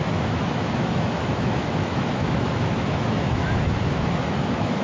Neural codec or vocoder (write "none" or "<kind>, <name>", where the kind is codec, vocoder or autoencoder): autoencoder, DAC-VAE